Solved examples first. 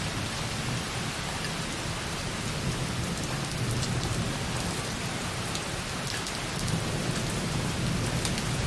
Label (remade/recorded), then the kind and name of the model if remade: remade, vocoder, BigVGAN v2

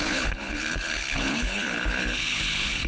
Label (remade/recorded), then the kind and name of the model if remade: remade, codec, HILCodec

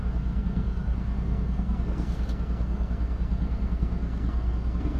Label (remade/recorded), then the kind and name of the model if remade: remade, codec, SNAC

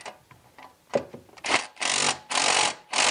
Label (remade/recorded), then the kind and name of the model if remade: recorded